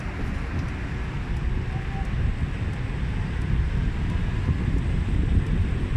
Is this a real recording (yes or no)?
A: yes